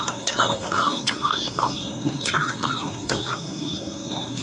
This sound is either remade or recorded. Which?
remade